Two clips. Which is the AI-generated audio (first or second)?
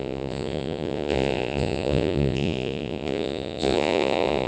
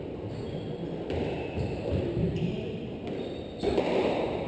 first